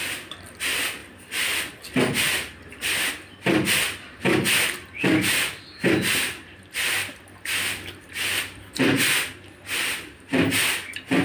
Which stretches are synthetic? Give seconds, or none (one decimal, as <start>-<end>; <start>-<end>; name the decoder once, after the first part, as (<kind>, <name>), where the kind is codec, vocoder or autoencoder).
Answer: none